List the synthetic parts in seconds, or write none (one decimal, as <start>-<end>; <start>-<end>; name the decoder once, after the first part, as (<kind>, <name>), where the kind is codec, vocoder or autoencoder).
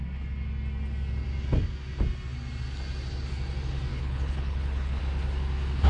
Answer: 3.9-5.0 (codec, HILCodec)